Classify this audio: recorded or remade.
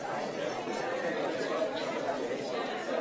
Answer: remade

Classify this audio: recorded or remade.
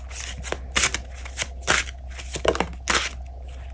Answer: recorded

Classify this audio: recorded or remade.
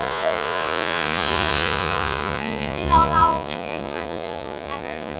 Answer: remade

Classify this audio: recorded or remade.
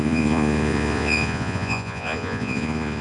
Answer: remade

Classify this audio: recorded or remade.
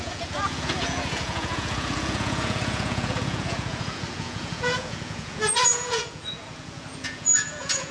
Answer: remade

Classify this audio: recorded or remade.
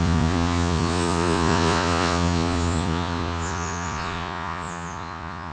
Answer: remade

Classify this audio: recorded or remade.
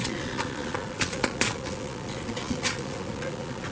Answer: remade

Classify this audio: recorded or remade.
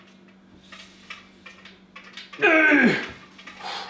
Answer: recorded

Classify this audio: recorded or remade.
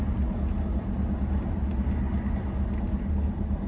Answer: recorded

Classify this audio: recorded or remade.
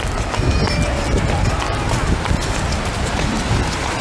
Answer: recorded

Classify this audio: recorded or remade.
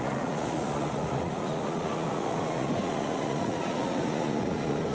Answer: remade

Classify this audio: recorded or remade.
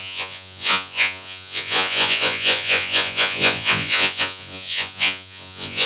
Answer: remade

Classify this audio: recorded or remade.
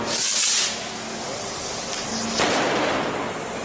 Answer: recorded